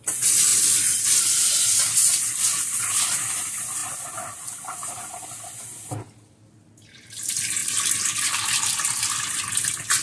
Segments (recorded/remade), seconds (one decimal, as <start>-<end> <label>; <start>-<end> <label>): 0.0-10.0 recorded